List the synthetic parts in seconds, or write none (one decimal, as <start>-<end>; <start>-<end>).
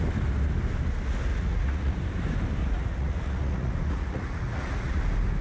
1.3-1.9; 2.6-5.0